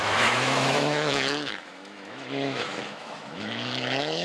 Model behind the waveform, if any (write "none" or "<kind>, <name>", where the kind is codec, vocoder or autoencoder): autoencoder, DAC-VAE